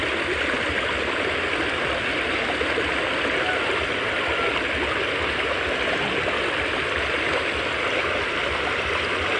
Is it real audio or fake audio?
real